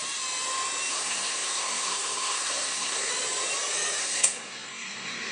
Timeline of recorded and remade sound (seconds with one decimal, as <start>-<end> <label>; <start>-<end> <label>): 0.0-0.9 recorded; 0.9-3.1 remade; 3.1-4.0 recorded; 4.0-5.3 remade